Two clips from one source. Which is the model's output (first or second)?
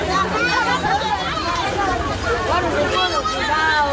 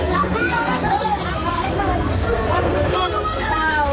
second